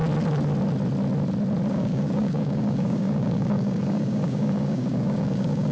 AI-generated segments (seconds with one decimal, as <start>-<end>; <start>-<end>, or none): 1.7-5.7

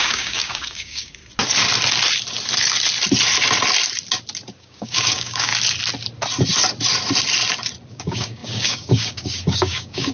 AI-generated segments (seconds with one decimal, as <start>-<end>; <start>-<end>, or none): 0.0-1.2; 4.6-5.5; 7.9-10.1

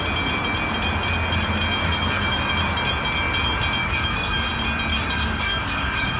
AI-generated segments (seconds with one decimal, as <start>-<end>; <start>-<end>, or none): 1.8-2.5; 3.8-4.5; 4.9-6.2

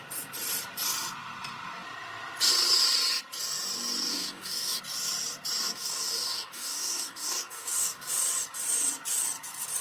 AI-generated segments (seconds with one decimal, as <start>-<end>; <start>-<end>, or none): 4.1-4.8; 5.6-8.1

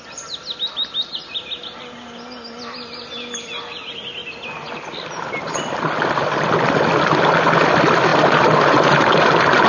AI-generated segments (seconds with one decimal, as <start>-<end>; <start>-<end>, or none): none